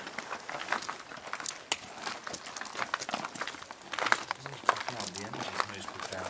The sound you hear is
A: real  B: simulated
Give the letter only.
A